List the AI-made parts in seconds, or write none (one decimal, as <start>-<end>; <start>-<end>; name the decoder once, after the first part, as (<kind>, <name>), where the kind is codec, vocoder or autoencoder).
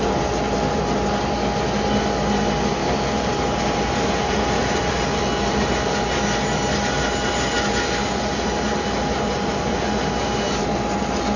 2.8-4.9 (vocoder, BigVGAN v2); 8.0-11.0